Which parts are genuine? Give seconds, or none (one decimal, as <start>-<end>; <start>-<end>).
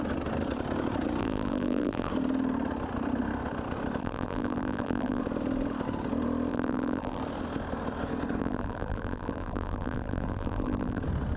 0.0-1.2; 2.1-4.0; 5.2-6.5; 7.2-8.4; 11.0-11.4